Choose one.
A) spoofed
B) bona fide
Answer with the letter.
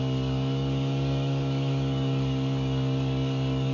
A